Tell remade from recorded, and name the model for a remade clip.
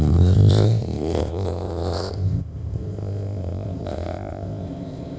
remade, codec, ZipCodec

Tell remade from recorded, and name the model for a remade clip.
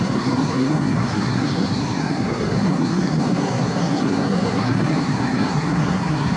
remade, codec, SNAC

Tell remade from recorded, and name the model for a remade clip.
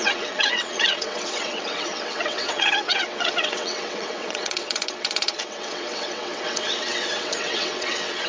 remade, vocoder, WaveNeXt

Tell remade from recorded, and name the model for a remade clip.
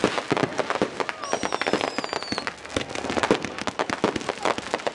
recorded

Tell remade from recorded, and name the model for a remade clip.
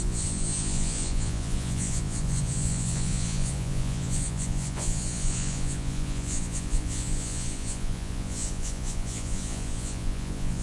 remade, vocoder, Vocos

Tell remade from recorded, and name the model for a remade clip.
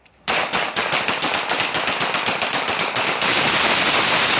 recorded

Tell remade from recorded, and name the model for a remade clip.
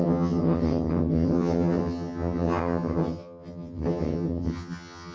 remade, vocoder, HiFi-GAN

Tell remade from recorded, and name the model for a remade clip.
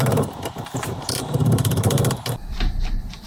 remade, vocoder, BigVGAN v2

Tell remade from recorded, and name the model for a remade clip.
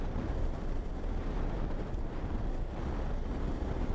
recorded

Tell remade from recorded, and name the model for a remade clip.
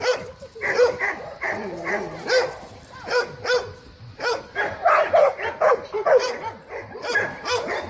recorded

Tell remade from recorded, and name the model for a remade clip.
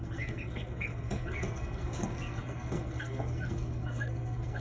remade, codec, SNAC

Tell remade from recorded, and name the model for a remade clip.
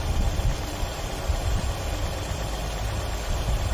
recorded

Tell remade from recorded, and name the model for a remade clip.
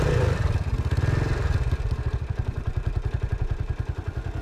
remade, vocoder, BigVGAN v2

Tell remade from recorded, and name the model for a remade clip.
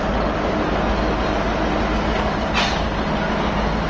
recorded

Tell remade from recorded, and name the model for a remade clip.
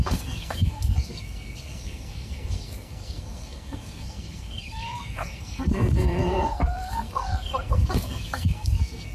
remade, codec, SNAC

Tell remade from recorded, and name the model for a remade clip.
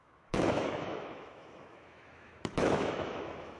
remade, autoencoder, DAC-VAE